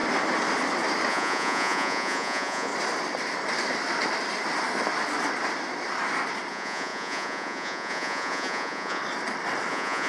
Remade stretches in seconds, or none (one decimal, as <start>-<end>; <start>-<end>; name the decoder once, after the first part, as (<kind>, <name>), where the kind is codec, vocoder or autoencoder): 1.1-2.7 (vocoder, Vocos); 6.5-9.0; 9.7-10.1